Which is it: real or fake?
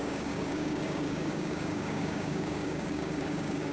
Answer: fake